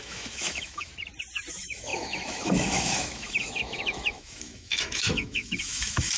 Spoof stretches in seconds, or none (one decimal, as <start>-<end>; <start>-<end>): 0.0-0.9; 1.5-6.2